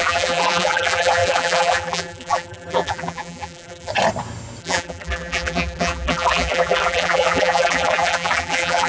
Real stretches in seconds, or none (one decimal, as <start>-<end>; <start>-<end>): 3.9-4.6